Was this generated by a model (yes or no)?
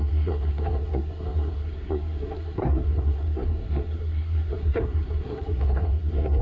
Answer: yes